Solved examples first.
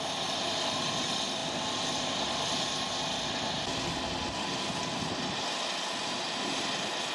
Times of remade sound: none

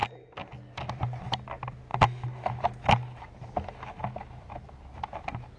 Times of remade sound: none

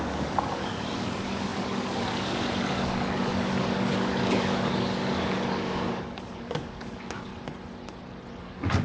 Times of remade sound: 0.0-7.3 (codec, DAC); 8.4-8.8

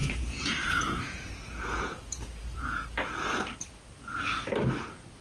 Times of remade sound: 0.0-2.9 (vocoder, Vocos)

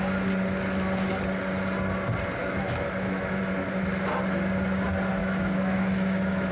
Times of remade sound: 2.4-3.4 (autoencoder, DAC-VAE); 5.2-6.5

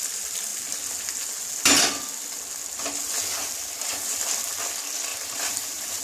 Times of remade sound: 5.1-6.0 (vocoder, BigVGAN v2)

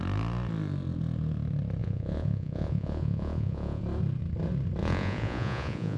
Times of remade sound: 1.8-3.8 (vocoder, Vocos); 4.8-6.0